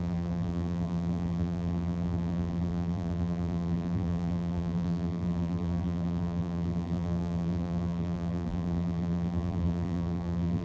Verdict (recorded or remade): remade